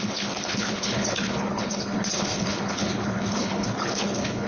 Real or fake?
fake